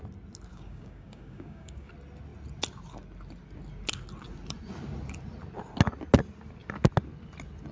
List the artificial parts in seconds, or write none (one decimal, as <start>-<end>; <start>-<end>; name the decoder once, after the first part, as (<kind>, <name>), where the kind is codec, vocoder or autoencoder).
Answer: 0.5-1.9 (codec, DAC)